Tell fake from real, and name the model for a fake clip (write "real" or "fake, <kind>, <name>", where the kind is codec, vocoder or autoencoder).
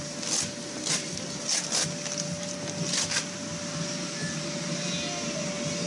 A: real